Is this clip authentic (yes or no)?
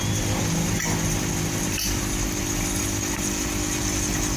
yes